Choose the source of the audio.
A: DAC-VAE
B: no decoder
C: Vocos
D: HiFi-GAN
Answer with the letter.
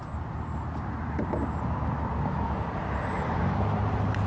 B